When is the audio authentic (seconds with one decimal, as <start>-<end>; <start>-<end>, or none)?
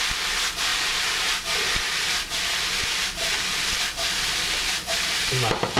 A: 0.0-0.7; 3.8-5.8